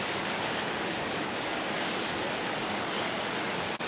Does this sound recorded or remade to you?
remade